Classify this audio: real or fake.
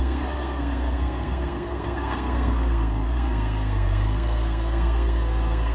fake